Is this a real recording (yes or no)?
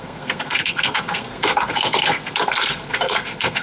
no